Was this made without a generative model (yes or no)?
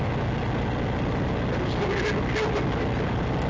yes